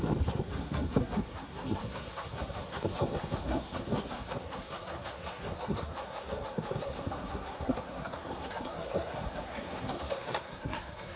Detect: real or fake fake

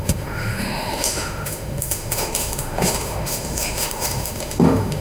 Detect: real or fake fake